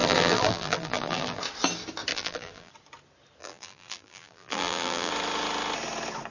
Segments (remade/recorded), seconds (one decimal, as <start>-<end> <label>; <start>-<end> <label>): 0.0-1.4 remade; 1.4-2.1 recorded; 2.1-2.7 remade; 2.7-3.4 recorded; 3.4-5.1 remade; 5.1-6.3 recorded